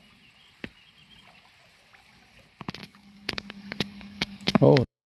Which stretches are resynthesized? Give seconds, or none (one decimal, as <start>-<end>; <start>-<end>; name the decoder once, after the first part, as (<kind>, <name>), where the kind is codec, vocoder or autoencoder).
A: 2.8-5.1 (codec, DAC)